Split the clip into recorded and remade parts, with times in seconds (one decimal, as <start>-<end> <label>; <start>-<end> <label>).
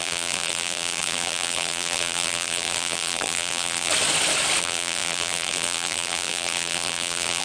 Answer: 0.0-3.9 remade; 3.9-4.6 recorded; 4.6-7.4 remade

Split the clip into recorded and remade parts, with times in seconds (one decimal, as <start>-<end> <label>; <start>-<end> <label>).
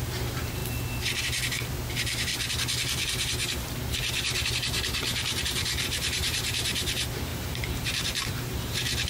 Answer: 0.0-0.6 remade; 0.6-1.2 recorded; 1.2-2.3 remade; 2.3-4.5 recorded; 4.5-9.1 remade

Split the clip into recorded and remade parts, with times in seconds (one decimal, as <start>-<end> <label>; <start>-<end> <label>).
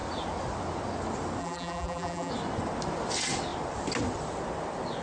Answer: 0.0-1.4 recorded; 1.4-2.3 remade; 2.3-5.0 recorded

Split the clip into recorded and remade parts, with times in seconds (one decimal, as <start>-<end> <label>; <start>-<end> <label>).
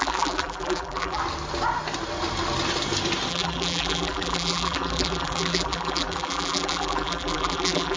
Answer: 0.0-1.2 remade; 1.2-3.3 recorded; 3.3-8.0 remade